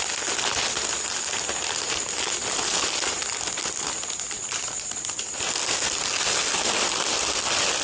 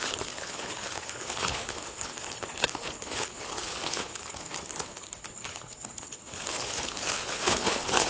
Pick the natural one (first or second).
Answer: first